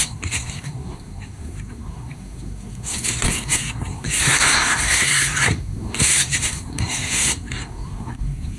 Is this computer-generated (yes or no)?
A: yes